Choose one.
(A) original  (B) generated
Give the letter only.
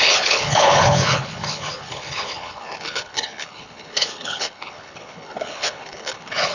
B